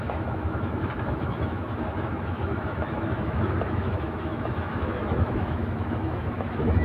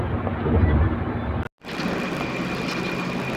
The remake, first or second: first